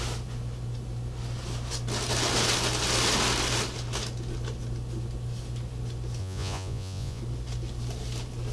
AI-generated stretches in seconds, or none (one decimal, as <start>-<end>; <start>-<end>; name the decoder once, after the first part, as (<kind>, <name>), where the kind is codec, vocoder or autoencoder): 6.2-7.2 (vocoder, Vocos)